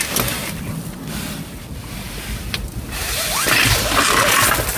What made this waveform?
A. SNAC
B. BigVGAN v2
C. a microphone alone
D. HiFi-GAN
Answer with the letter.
C